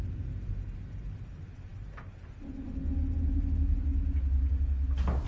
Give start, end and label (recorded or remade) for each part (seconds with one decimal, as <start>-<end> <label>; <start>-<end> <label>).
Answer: 0.0-5.3 recorded